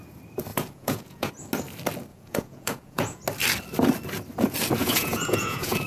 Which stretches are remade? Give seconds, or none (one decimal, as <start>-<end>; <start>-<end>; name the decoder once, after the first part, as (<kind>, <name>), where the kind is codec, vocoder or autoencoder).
0.5-1.3 (vocoder, Vocos); 2.1-3.2; 4.8-5.9